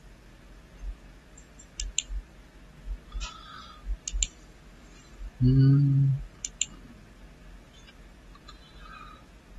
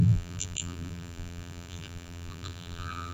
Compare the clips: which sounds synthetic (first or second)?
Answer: second